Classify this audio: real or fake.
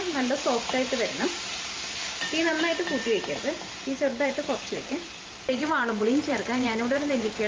fake